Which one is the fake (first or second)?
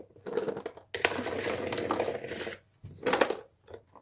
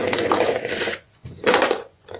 second